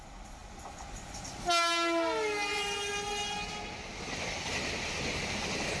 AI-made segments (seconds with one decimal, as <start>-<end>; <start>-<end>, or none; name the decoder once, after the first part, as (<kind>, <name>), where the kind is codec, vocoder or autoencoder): none